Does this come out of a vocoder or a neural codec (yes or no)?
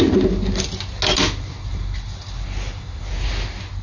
no